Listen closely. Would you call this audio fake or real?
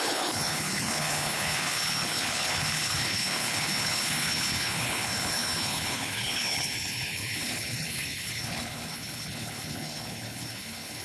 fake